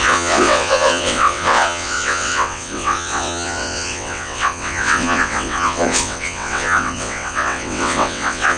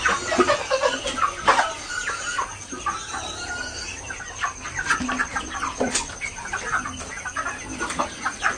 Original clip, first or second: second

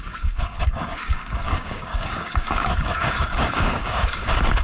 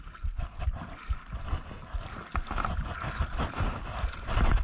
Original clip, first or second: second